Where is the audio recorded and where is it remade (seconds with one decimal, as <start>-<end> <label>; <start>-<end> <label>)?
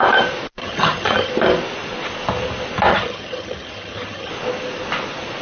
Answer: 0.0-0.6 recorded; 0.6-1.3 remade; 1.3-2.9 recorded; 2.9-4.3 remade; 4.3-5.4 recorded